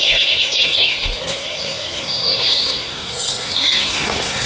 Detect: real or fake fake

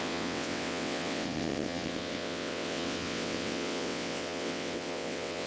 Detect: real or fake fake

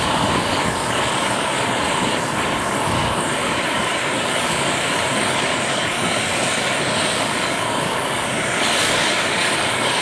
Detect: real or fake fake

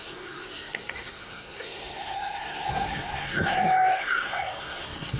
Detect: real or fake fake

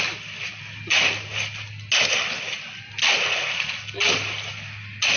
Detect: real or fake real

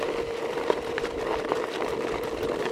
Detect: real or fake real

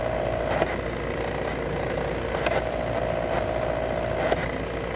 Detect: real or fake real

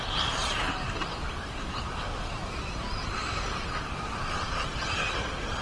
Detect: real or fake fake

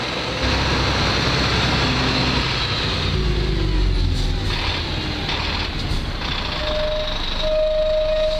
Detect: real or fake real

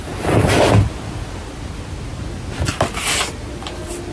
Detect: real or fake real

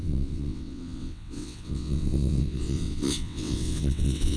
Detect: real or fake fake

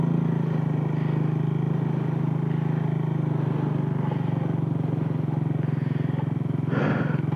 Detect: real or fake real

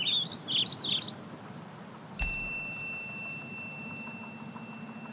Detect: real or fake real